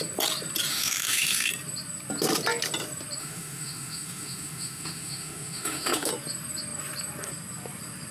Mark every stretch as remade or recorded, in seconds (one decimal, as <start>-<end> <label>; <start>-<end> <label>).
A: 0.0-0.7 recorded; 0.7-1.5 remade; 1.5-3.2 recorded; 3.2-6.1 remade; 6.1-8.1 recorded